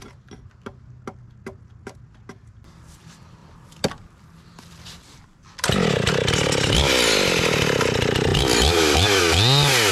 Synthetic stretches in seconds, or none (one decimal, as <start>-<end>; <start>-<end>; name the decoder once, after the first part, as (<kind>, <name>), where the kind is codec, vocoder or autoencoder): 3.4-6.3 (vocoder, BigVGAN v2)